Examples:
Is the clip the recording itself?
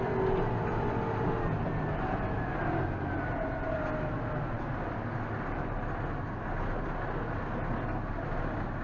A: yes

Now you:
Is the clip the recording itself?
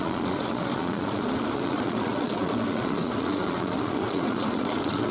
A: no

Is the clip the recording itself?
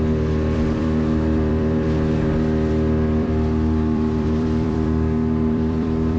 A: no